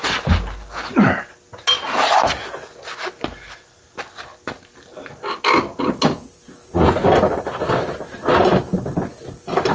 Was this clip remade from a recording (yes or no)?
no